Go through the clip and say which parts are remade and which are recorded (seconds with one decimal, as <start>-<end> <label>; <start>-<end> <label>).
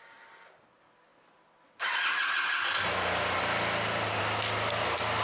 0.0-5.2 recorded